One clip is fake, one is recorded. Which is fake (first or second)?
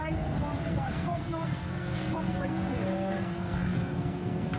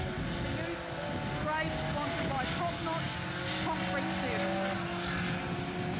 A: first